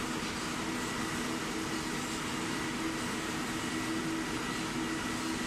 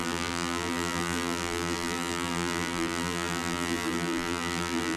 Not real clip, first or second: second